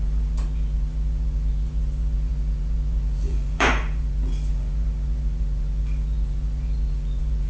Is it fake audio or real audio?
fake